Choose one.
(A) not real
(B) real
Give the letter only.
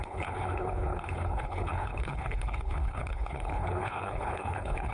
A